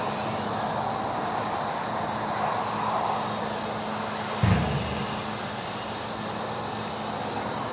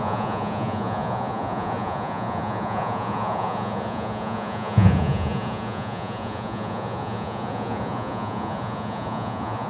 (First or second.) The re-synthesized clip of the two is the second